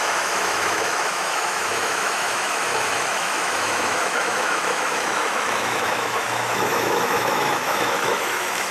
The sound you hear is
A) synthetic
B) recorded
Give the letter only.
A